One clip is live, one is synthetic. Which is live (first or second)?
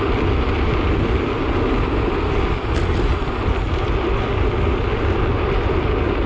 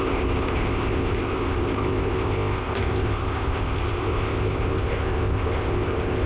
first